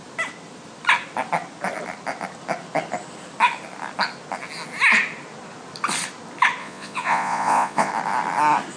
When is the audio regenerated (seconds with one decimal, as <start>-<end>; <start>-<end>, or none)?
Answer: 6.6-7.9